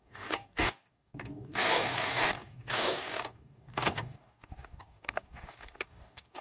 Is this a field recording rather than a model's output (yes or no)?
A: no